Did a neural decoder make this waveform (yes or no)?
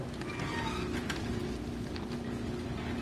no